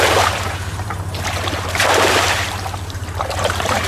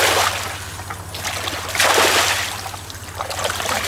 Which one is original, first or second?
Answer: second